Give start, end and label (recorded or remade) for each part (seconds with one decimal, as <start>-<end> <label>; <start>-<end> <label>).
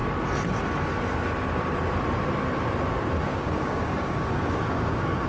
0.0-3.2 recorded; 3.2-5.3 remade